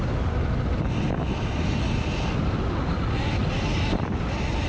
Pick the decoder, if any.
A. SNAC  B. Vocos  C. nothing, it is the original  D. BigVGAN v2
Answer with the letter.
C